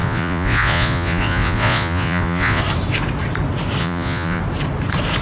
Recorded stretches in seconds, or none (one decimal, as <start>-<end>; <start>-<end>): 2.6-3.8; 4.4-5.2

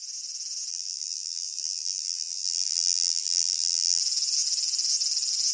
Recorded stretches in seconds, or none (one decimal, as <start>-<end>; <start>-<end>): 0.0-0.7; 4.0-5.5

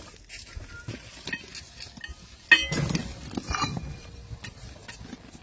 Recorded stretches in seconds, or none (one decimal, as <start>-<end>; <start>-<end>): 0.0-5.4